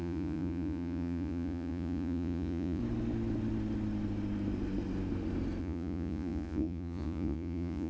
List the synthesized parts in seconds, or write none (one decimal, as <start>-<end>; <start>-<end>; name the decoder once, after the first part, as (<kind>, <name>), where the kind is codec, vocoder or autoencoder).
0.0-2.8 (vocoder, Vocos); 5.6-7.9